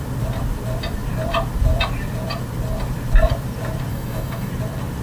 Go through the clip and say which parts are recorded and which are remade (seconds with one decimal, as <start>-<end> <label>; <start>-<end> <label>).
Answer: 0.0-3.9 recorded; 3.9-4.5 remade; 4.5-5.0 recorded